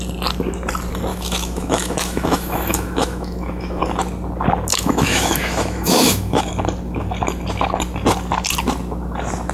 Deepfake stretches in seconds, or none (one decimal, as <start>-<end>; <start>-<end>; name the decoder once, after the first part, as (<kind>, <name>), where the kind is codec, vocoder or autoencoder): 1.1-3.8 (autoencoder, DAC-VAE); 4.7-6.4